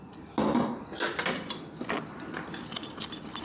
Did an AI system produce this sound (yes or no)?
no